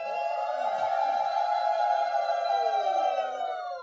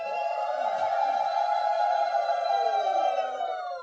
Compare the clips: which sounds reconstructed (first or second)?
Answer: second